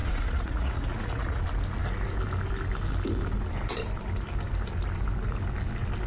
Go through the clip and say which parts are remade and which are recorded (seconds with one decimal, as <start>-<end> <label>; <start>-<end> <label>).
0.0-1.4 remade; 1.4-6.1 recorded